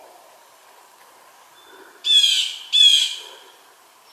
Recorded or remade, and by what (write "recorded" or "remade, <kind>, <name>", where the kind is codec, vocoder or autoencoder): recorded